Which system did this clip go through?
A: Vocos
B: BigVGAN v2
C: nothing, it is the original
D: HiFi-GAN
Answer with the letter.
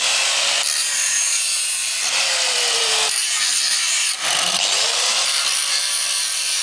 B